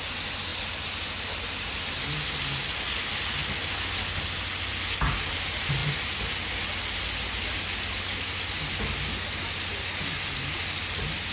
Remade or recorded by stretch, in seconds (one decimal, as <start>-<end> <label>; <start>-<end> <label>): 0.0-11.3 recorded